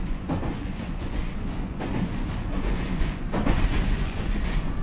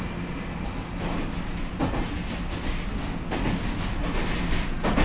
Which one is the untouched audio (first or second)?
second